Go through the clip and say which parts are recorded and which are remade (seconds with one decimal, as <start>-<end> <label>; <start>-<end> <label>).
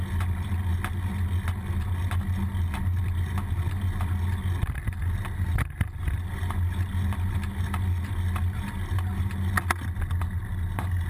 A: 0.0-11.1 recorded